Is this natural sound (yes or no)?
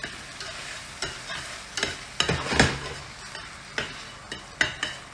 yes